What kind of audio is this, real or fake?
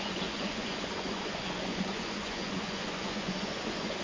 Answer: fake